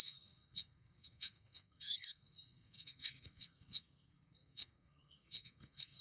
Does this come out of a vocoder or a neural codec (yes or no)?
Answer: yes